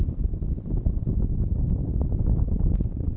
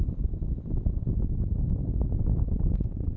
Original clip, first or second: second